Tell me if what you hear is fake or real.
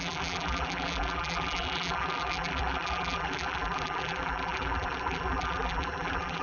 fake